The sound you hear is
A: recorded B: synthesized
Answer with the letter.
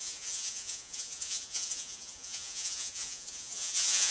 B